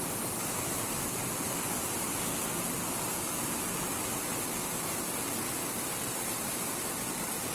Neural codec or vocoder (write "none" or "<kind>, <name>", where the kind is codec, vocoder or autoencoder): none